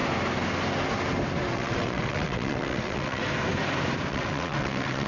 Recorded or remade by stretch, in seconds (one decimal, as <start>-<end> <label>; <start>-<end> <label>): 0.0-1.5 recorded; 1.5-3.2 remade; 3.2-4.1 recorded; 4.1-5.1 remade